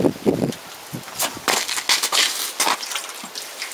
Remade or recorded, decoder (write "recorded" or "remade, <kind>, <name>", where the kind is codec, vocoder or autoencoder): recorded